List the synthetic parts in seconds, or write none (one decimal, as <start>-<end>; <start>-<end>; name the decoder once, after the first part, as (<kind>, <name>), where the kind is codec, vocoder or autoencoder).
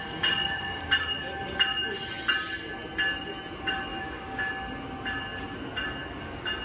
3.9-4.5 (autoencoder, DAC-VAE)